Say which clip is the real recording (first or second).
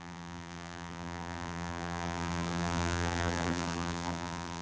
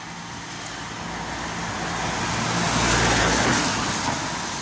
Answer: second